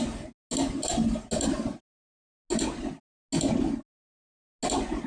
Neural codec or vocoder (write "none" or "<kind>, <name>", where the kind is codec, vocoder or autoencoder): none